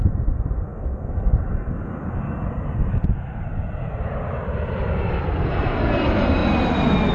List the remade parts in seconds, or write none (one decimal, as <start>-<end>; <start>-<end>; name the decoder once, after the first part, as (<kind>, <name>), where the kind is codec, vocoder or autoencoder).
none